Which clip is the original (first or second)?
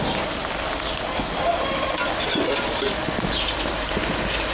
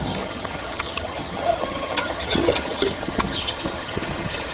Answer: first